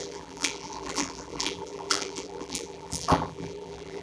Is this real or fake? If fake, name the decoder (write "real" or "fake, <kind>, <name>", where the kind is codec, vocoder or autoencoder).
fake, vocoder, BigVGAN v2